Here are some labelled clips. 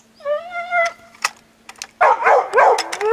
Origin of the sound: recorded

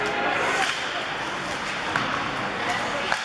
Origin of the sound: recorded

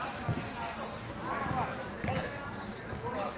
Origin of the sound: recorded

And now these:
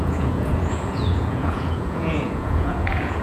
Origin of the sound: remade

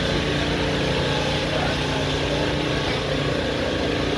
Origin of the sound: recorded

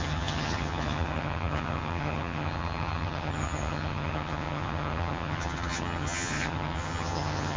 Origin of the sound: remade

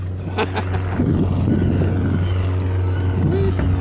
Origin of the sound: recorded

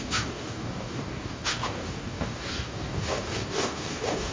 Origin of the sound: remade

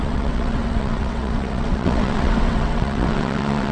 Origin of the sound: remade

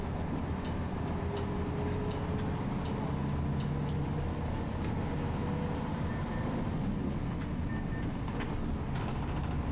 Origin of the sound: recorded